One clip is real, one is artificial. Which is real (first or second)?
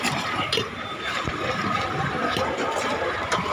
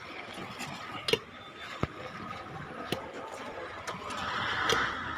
second